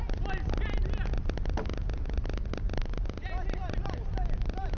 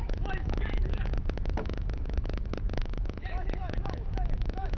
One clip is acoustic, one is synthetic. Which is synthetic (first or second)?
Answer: second